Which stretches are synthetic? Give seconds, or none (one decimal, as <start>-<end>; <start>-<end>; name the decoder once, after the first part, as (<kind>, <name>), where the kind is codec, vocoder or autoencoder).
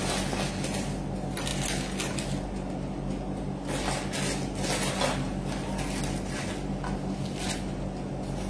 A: none